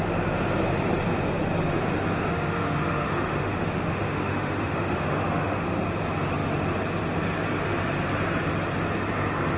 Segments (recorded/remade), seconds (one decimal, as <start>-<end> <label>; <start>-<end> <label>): 0.0-2.3 recorded; 2.3-5.8 remade; 5.8-9.6 recorded